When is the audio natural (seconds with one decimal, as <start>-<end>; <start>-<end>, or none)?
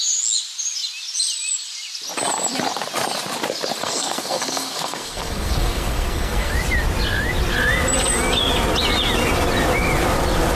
0.0-3.8; 6.5-10.6